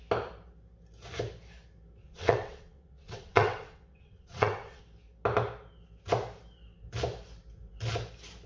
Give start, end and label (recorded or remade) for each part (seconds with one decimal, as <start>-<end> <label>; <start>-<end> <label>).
0.0-2.0 recorded; 2.0-4.8 remade; 4.8-8.5 recorded